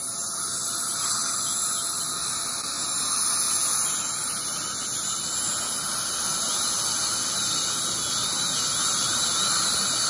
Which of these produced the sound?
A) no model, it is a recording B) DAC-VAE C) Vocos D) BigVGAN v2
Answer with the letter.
A